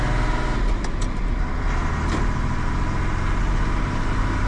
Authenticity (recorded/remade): recorded